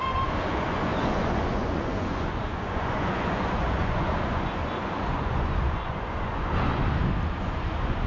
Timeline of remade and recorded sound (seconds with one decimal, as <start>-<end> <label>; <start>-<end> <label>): 0.0-6.8 remade; 6.8-7.4 recorded; 7.4-8.1 remade

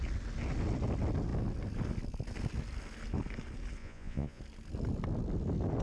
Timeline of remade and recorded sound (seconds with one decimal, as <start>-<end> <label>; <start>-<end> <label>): 0.0-3.8 recorded; 3.8-4.4 remade; 4.4-5.8 recorded

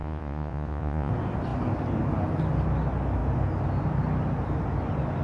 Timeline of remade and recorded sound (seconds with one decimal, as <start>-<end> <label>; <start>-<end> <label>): 0.0-1.1 remade; 1.1-5.2 recorded

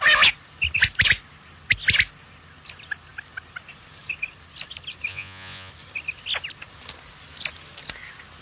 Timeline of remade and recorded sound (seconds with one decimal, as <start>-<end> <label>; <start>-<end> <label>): 0.0-5.1 recorded; 5.1-5.7 remade; 5.7-8.4 recorded

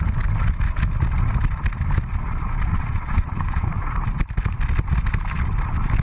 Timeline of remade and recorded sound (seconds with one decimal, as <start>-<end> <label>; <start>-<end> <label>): 0.0-2.7 recorded; 2.7-3.8 remade; 3.8-6.0 recorded

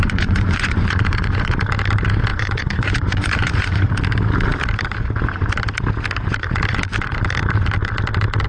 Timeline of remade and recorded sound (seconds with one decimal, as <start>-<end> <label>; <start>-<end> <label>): 0.0-1.6 remade; 1.6-2.3 recorded; 2.3-3.9 remade; 3.9-8.5 recorded

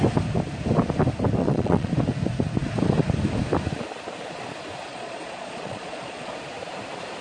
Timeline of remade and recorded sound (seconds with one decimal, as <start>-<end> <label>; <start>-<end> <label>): 0.0-1.4 recorded; 1.4-1.9 remade; 1.9-4.9 recorded; 4.9-6.3 remade; 6.3-7.2 recorded